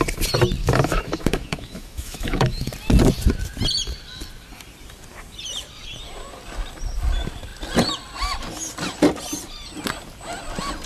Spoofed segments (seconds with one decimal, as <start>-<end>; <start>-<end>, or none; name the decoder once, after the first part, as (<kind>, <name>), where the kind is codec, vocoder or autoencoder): 0.6-2.7 (autoencoder, DAC-VAE)